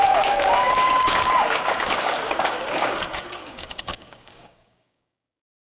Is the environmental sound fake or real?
fake